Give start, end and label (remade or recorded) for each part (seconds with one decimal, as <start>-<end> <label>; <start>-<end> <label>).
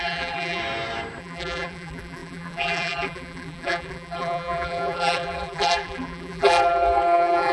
0.0-0.6 remade; 0.6-1.2 recorded; 1.2-7.5 remade